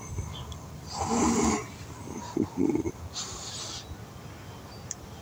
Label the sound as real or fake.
real